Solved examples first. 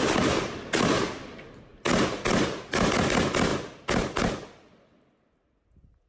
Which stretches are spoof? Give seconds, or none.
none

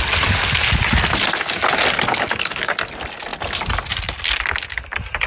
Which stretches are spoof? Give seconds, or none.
2.1-2.7 (autoencoder, DAC-VAE)

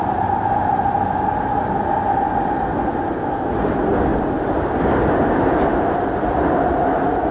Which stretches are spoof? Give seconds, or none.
none